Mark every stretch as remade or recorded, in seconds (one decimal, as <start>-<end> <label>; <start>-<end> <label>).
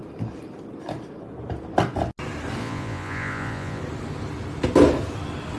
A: 0.0-2.6 recorded; 2.6-3.8 remade; 3.8-5.6 recorded